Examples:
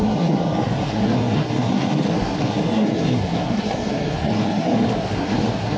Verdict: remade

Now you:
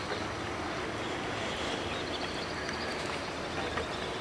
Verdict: recorded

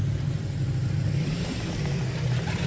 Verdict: recorded